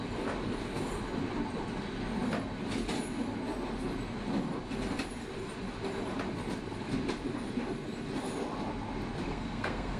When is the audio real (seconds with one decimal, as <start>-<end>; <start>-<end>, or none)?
0.0-9.3